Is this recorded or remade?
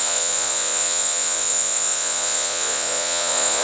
remade